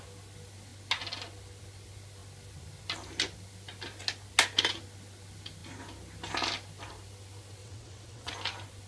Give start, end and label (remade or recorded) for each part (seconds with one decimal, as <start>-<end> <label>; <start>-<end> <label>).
0.0-7.6 recorded; 7.6-8.3 remade; 8.3-8.9 recorded